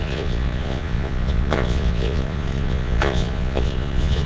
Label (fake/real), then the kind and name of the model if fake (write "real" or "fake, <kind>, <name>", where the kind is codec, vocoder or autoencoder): fake, vocoder, Vocos